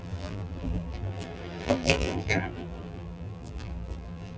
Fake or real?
fake